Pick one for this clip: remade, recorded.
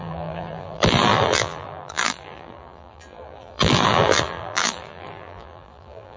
remade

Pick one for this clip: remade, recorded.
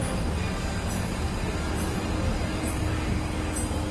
recorded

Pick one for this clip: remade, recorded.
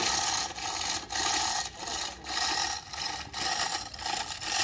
recorded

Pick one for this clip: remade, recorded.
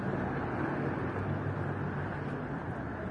recorded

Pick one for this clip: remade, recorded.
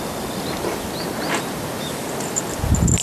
recorded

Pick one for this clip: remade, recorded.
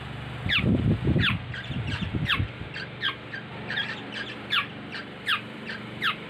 remade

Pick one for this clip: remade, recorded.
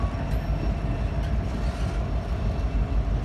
recorded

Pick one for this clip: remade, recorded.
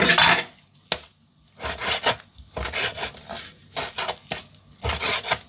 recorded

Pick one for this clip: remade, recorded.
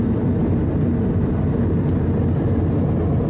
recorded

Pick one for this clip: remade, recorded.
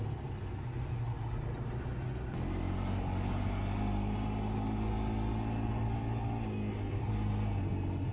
recorded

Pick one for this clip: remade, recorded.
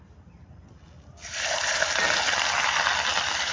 recorded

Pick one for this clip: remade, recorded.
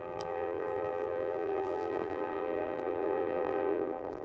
remade